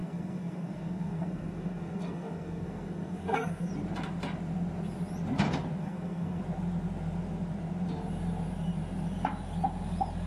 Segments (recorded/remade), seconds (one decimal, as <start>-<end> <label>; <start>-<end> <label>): 0.0-3.7 remade; 3.7-5.8 recorded; 5.8-6.4 remade; 6.4-10.3 recorded